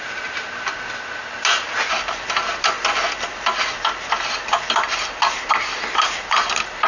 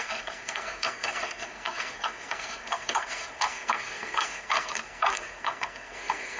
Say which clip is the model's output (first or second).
second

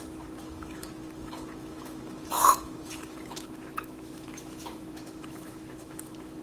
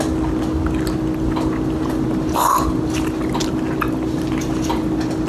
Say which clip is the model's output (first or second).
first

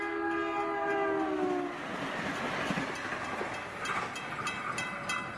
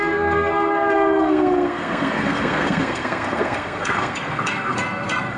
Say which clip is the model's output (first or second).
second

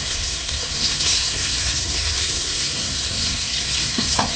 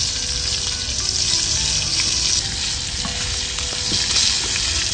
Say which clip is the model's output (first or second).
first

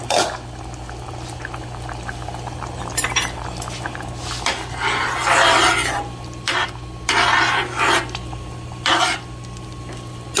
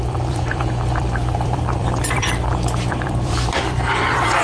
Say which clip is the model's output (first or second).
second